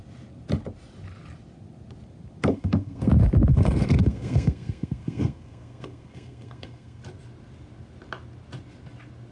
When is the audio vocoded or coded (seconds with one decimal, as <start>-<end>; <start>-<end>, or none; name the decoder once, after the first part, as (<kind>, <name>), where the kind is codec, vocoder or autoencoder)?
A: 2.5-3.1 (codec, SNAC); 3.5-7.0